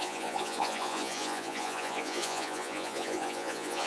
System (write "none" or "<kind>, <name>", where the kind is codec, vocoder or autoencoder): vocoder, Vocos